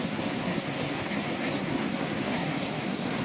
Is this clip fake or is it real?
fake